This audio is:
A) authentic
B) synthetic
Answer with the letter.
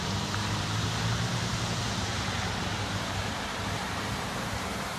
B